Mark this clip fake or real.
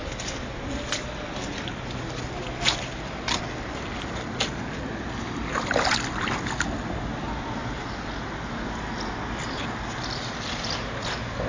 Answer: real